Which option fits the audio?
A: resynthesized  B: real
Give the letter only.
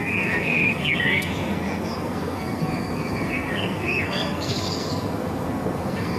A